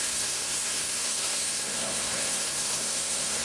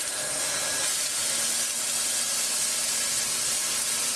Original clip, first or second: second